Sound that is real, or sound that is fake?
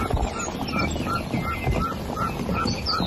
real